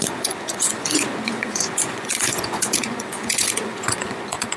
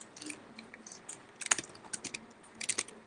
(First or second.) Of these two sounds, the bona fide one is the second